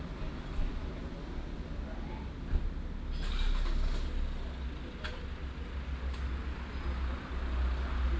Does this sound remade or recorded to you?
recorded